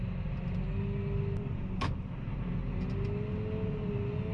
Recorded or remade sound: recorded